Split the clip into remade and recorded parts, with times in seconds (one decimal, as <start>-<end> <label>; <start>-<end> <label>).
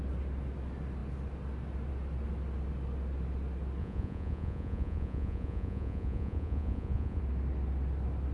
0.0-3.8 recorded; 3.8-7.2 remade; 7.2-8.3 recorded